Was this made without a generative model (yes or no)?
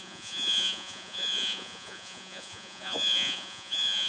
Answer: no